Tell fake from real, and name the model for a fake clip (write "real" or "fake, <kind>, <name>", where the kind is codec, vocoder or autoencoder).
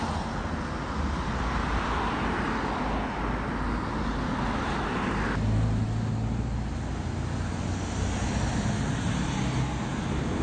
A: real